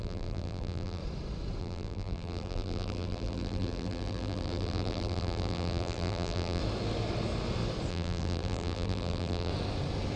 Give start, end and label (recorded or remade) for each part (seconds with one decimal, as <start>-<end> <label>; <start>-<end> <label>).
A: 0.0-1.0 remade; 1.0-1.6 recorded; 1.6-6.6 remade; 6.6-7.9 recorded; 7.9-9.5 remade; 9.5-10.2 recorded